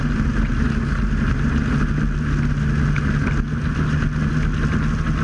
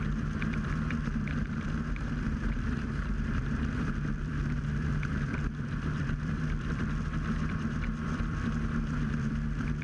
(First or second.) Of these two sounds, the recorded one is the first